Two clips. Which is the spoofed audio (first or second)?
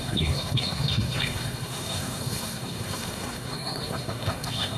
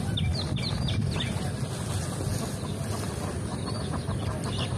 first